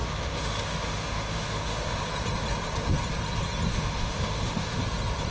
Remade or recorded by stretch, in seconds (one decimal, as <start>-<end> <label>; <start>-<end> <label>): 0.0-2.0 remade; 2.0-3.7 recorded; 3.7-4.8 remade; 4.8-5.3 recorded